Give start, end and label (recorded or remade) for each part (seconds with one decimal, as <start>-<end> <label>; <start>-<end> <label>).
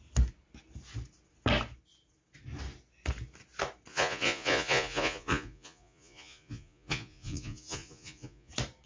0.0-3.9 recorded; 3.9-8.5 remade; 8.5-8.9 recorded